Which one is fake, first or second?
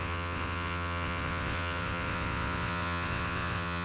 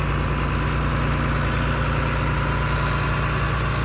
first